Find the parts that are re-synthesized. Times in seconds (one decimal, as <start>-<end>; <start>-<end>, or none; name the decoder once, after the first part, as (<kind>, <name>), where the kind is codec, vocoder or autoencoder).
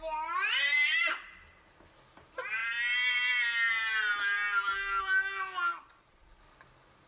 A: 5.7-6.4 (vocoder, Vocos)